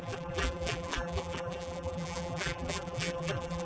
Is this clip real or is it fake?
fake